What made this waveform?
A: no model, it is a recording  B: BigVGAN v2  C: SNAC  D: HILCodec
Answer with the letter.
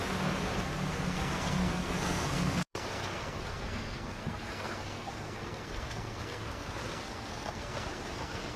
C